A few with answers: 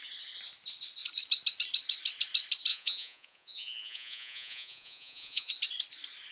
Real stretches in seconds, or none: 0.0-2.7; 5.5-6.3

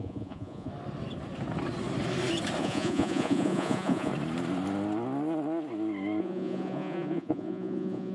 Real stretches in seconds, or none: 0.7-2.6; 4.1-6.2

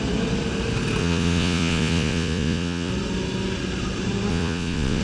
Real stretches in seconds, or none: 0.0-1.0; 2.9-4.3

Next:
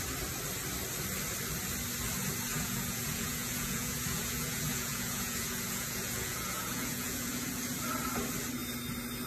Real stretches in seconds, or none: 0.0-2.5; 7.6-9.3